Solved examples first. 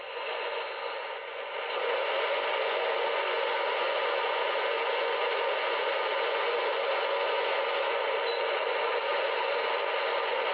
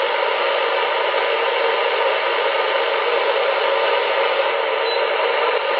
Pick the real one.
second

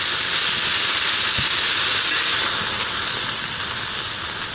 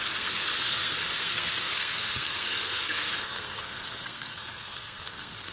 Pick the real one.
first